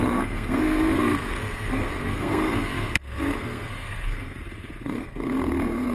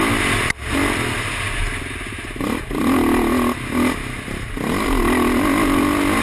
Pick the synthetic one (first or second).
first